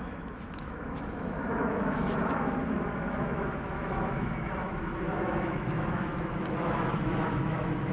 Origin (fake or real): fake